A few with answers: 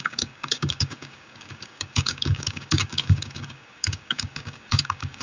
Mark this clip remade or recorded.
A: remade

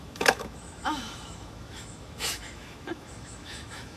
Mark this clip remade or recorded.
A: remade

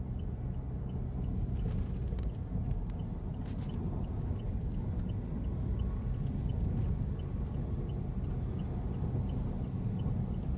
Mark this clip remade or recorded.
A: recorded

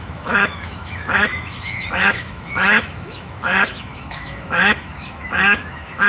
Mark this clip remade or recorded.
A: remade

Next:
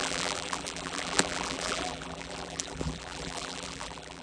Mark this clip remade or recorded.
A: remade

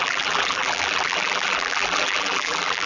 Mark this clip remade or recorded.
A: remade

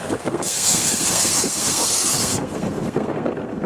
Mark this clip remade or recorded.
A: remade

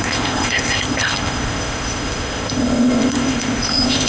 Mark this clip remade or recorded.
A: remade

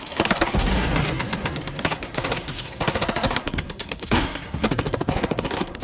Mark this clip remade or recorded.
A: remade